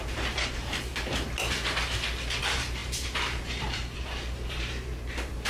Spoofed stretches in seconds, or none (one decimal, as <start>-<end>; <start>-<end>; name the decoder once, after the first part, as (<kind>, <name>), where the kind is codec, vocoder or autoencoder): 0.0-0.9 (vocoder, BigVGAN v2); 2.4-5.5